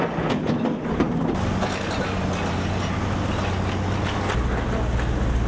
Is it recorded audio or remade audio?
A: recorded